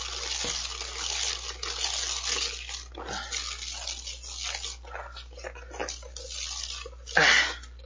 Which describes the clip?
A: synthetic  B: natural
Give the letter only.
B